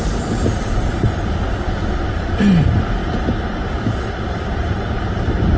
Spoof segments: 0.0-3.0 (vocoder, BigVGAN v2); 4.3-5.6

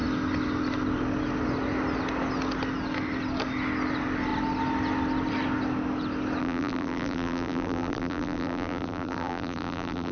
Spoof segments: 6.4-10.1 (vocoder, BigVGAN v2)

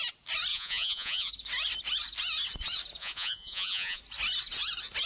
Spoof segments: 0.5-1.3 (vocoder, Vocos); 3.0-4.0